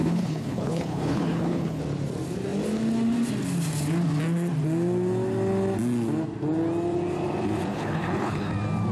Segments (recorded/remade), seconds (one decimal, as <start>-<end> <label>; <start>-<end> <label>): 0.0-1.8 remade; 1.8-7.7 recorded; 7.7-8.5 remade; 8.5-8.9 recorded